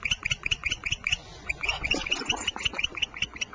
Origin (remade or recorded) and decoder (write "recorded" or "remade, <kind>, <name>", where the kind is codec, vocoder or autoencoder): remade, vocoder, Vocos